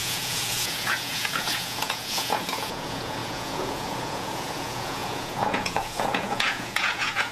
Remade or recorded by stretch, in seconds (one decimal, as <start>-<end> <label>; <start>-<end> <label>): 0.0-7.3 remade